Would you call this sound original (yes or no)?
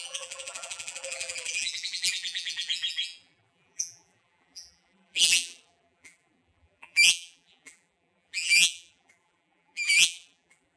no